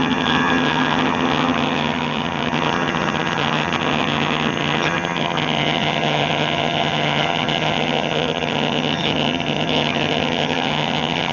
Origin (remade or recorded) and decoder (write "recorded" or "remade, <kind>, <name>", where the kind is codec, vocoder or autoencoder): remade, vocoder, HiFi-GAN